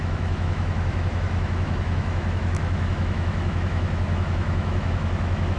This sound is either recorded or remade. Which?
remade